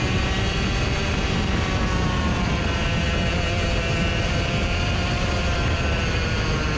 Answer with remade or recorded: recorded